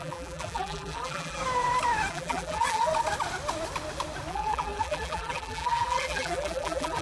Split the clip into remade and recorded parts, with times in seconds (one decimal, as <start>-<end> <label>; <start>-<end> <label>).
0.0-1.4 remade; 1.4-2.1 recorded; 2.1-2.9 remade; 2.9-4.3 recorded; 4.3-7.0 remade